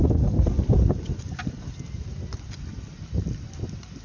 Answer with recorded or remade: recorded